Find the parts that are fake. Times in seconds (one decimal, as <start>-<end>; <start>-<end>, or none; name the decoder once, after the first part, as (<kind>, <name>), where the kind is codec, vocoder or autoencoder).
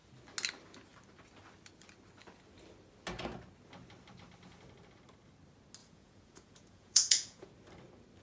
5.8-7.5 (vocoder, Vocos)